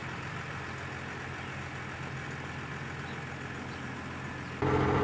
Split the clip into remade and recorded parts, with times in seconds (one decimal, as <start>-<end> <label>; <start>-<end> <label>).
0.0-5.0 recorded